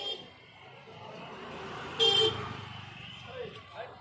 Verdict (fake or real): fake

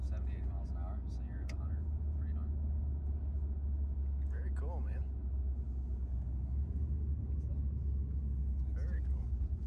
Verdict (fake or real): real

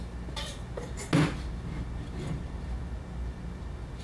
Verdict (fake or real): real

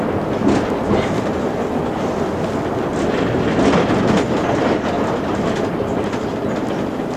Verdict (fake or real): real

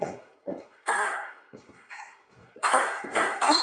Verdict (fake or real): fake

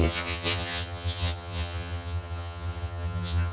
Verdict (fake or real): fake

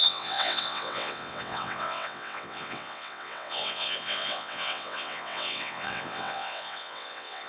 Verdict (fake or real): fake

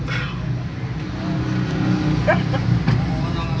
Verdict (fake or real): real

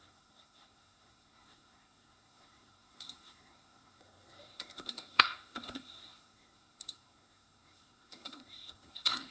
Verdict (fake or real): fake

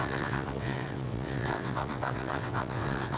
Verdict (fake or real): fake